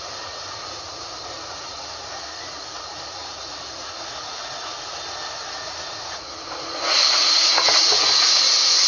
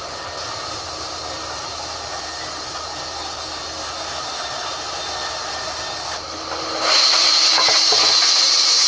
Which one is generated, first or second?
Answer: first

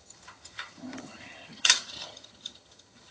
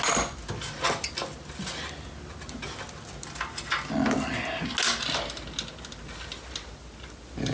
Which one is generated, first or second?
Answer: first